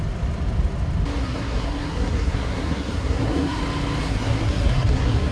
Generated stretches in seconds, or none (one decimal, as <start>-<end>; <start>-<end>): 1.2-3.6; 4.0-5.3